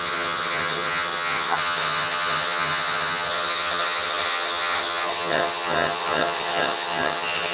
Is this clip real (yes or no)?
no